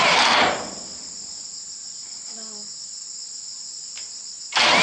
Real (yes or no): yes